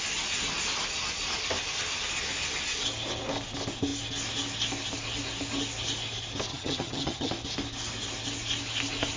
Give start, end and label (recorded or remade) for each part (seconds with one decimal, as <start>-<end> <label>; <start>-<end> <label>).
0.0-6.5 recorded; 6.5-7.3 remade; 7.3-9.2 recorded